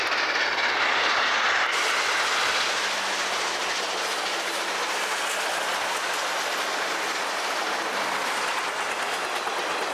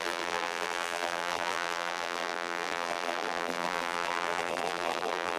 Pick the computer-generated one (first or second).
second